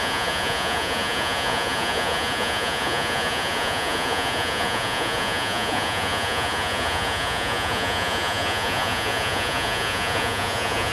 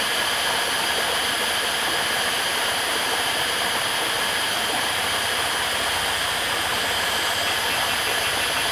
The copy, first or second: first